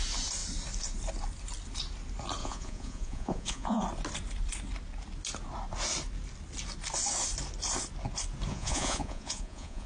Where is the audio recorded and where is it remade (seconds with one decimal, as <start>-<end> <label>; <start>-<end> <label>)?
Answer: 0.0-2.4 recorded; 2.4-3.8 remade; 3.8-8.5 recorded; 8.5-9.9 remade

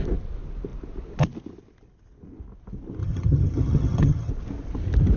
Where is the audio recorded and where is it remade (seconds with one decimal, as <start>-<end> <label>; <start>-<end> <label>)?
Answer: 0.0-3.0 recorded; 3.0-4.3 remade; 4.3-5.2 recorded